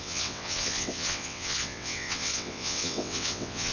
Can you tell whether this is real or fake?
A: fake